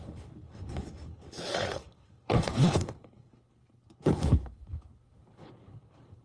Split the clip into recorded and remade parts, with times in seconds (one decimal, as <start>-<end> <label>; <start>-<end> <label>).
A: 0.0-6.2 remade